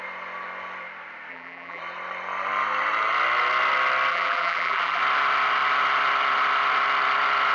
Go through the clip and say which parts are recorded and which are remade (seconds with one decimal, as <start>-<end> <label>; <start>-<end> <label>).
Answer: 0.0-1.3 recorded; 1.3-1.8 remade; 1.8-4.1 recorded; 4.1-5.0 remade; 5.0-7.5 recorded